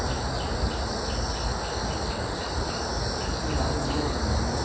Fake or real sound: real